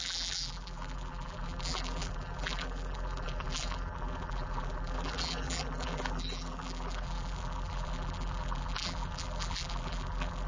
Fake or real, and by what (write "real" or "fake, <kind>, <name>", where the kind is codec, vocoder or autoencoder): fake, vocoder, BigVGAN v2